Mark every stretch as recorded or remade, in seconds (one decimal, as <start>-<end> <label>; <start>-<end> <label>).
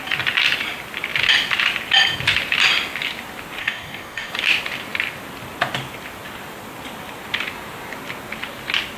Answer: 0.0-3.6 recorded; 3.6-4.3 remade; 4.3-9.0 recorded